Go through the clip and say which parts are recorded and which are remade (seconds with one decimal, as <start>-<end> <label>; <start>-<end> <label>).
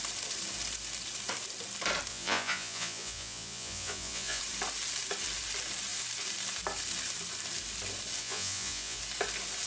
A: 0.0-2.1 recorded; 2.1-4.4 remade; 4.4-8.2 recorded; 8.2-9.0 remade; 9.0-9.7 recorded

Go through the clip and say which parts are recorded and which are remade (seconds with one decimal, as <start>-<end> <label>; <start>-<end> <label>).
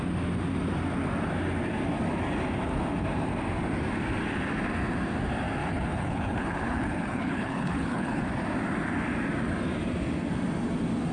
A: 0.0-5.6 recorded; 5.6-8.2 remade; 8.2-11.1 recorded